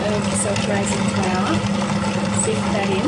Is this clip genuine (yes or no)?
yes